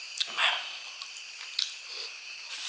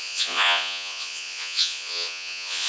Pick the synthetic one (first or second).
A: second